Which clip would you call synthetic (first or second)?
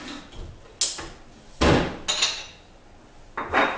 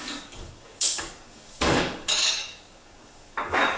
second